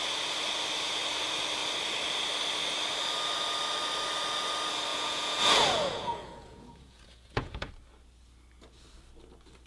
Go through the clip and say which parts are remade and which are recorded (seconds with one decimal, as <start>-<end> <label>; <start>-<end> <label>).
0.0-4.9 recorded; 4.9-7.7 remade; 7.7-9.7 recorded